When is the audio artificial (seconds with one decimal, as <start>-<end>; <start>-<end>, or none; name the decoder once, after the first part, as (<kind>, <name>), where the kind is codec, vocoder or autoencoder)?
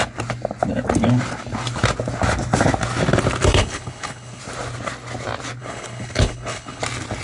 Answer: 3.6-4.4 (codec, HILCodec); 5.6-6.8